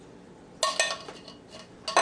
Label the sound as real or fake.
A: real